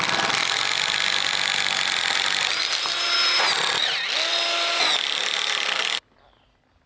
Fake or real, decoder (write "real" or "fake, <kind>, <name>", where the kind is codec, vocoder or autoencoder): real